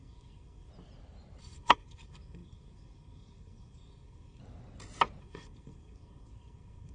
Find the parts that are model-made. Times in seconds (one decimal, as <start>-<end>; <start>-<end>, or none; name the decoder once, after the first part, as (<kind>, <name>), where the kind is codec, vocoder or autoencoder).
0.0-0.7 (codec, SNAC); 1.4-4.4; 5.2-6.9